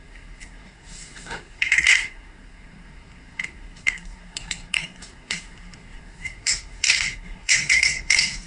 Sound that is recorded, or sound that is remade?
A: remade